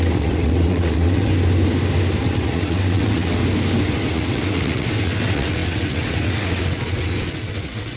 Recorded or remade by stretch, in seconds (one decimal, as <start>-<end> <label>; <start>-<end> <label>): 0.0-1.3 remade; 1.3-2.2 recorded; 2.2-3.4 remade; 3.4-4.1 recorded; 4.1-8.0 remade